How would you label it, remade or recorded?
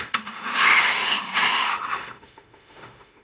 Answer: remade